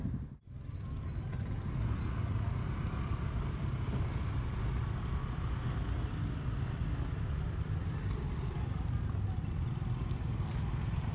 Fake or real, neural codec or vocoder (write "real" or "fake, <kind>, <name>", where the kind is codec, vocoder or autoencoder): real